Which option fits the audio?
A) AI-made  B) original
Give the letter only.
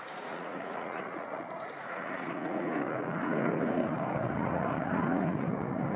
A